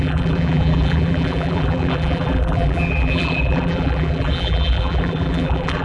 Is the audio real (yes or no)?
no